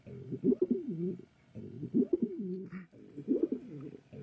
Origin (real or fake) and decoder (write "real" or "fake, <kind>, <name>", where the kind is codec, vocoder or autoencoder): real